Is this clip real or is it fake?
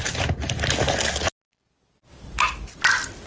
real